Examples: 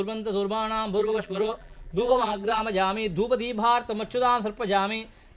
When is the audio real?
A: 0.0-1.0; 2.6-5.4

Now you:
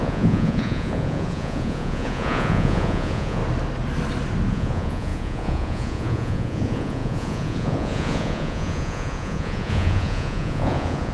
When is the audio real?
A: 3.4-4.5